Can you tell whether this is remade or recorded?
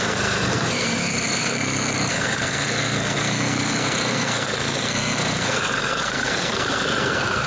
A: remade